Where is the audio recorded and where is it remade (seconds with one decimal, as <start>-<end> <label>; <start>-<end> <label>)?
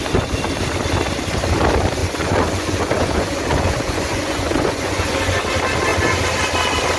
0.0-2.0 recorded; 2.0-5.4 remade; 5.4-7.0 recorded